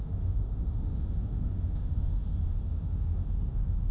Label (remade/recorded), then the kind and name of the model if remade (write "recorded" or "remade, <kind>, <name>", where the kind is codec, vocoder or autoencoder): remade, autoencoder, DAC-VAE